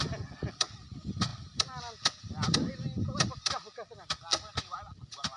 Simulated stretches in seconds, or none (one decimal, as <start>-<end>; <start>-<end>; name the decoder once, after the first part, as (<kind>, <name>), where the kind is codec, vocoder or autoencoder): none